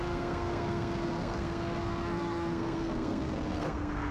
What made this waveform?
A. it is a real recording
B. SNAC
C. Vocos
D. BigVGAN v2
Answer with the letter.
B